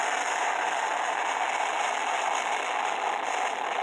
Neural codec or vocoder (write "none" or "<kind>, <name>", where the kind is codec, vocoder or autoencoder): none